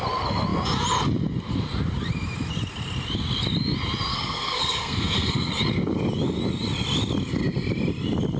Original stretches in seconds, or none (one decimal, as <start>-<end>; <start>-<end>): 0.0-4.1; 5.5-8.4